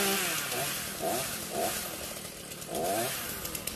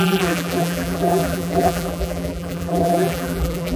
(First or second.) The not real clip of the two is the second